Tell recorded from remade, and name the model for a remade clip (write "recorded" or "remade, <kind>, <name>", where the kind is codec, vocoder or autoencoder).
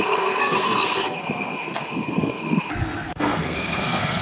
remade, codec, SNAC